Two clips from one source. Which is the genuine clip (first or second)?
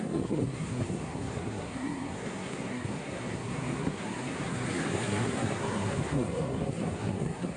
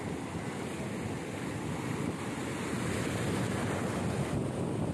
second